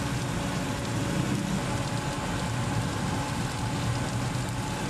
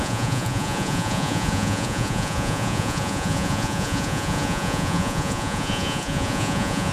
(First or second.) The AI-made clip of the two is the second